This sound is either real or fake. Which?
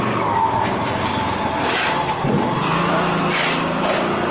real